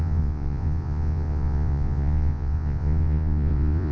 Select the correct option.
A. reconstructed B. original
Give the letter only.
A